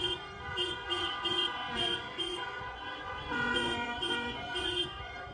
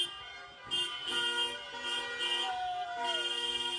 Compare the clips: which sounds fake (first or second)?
first